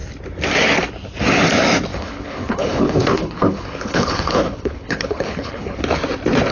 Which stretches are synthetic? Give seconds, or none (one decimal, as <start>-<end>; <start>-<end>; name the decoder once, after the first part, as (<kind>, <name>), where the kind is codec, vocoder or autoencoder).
1.9-5.8 (codec, HILCodec)